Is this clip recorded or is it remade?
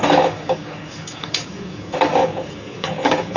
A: remade